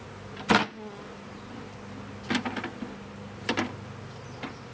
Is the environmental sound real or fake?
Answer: real